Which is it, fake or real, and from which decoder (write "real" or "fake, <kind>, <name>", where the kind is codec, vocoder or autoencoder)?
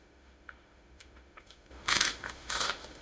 fake, autoencoder, DAC-VAE